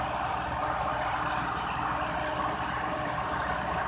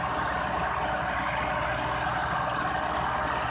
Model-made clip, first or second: first